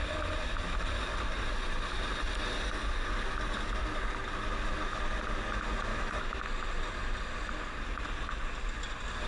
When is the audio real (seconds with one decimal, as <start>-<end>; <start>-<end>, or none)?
0.0-5.9; 6.4-9.3